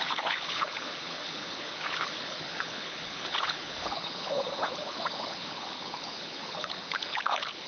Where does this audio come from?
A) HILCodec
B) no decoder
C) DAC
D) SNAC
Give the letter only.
A